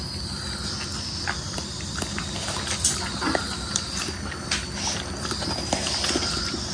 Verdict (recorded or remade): recorded